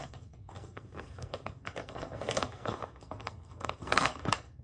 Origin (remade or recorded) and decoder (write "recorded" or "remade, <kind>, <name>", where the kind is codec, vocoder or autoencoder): remade, codec, SNAC